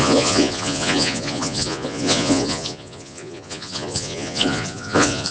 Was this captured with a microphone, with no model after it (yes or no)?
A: no